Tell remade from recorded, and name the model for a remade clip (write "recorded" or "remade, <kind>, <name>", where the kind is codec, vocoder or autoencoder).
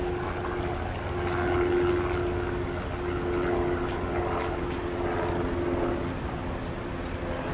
recorded